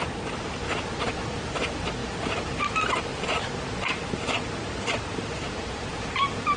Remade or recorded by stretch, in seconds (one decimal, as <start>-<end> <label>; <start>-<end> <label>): 0.0-2.0 recorded; 2.0-2.6 remade; 2.6-3.1 recorded; 3.1-6.6 remade